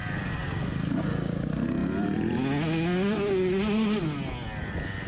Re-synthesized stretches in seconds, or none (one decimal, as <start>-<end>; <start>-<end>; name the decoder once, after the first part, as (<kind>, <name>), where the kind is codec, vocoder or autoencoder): 0.4-1.0 (vocoder, BigVGAN v2)